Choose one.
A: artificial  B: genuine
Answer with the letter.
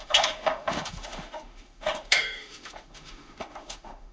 A